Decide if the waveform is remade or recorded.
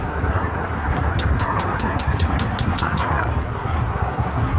remade